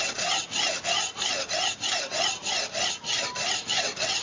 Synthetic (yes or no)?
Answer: no